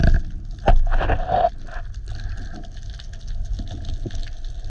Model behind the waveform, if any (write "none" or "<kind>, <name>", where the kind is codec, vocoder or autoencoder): none